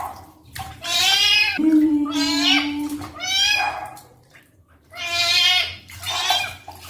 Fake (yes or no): yes